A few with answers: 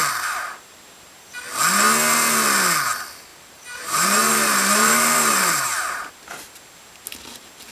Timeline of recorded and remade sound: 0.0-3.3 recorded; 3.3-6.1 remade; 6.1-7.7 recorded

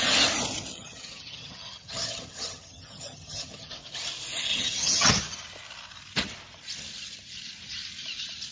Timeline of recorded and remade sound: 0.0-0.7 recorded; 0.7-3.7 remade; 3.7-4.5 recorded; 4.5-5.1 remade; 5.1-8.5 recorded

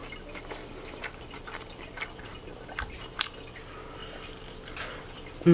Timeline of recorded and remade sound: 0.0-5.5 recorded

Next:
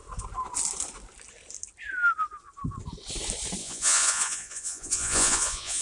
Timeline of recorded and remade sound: 0.0-3.6 recorded; 3.6-5.8 remade

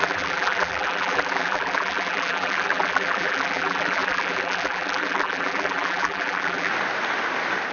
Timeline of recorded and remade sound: 0.0-6.7 remade; 6.7-7.7 recorded

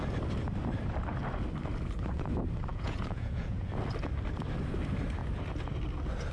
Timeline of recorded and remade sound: 0.0-2.7 recorded; 2.7-3.7 remade; 3.7-6.3 recorded

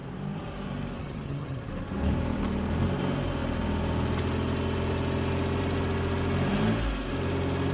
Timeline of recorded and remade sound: 0.0-1.0 recorded; 1.0-1.7 remade; 1.7-7.7 recorded

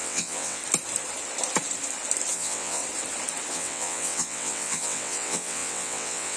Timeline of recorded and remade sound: 0.0-0.6 remade; 0.6-2.3 recorded; 2.3-2.8 remade; 2.8-3.5 recorded; 3.5-6.4 remade